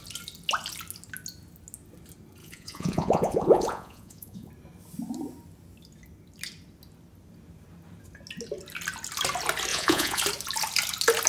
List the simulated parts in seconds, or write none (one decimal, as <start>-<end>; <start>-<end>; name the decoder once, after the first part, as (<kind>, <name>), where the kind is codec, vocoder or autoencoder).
2.4-4.5 (vocoder, Vocos); 9.7-10.2